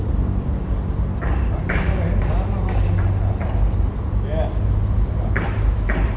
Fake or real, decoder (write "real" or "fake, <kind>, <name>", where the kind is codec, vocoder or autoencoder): real